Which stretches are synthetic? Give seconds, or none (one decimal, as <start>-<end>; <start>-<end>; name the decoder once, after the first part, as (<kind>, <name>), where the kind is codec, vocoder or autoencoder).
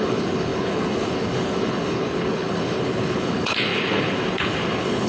0.0-5.1 (codec, HILCodec)